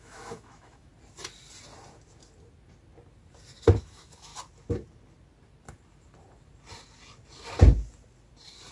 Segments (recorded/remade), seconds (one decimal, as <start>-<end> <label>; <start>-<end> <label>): 0.0-0.9 remade; 0.9-3.8 recorded; 3.8-4.3 remade; 4.3-8.7 recorded